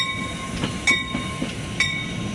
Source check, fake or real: real